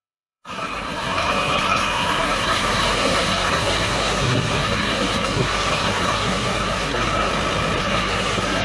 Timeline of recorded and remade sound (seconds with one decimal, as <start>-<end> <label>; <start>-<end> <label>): 0.0-7.3 remade; 7.3-7.8 recorded; 7.8-8.6 remade